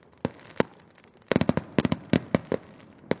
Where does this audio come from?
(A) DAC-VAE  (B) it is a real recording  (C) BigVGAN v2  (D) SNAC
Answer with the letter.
B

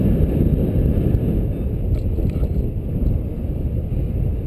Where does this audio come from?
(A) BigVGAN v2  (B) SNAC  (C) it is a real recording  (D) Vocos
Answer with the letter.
C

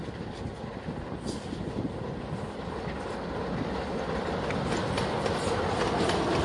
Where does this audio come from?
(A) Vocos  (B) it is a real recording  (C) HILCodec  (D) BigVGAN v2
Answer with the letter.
B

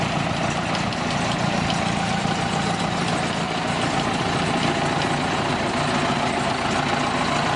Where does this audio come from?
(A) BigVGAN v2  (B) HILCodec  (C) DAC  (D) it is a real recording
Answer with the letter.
D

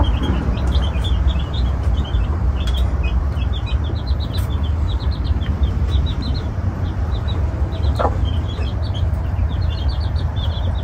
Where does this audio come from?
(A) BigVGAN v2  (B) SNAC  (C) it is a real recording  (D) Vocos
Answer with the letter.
A